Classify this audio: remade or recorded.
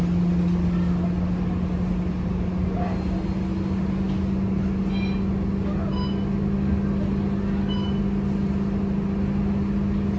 recorded